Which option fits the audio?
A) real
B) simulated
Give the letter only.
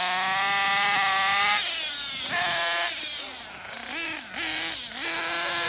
A